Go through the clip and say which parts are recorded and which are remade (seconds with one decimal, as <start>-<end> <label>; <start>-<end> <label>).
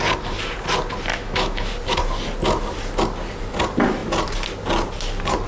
0.0-1.1 recorded; 1.1-1.7 remade; 1.7-5.5 recorded